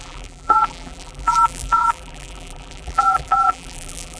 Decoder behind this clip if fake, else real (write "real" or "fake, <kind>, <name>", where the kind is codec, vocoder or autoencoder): fake, vocoder, BigVGAN v2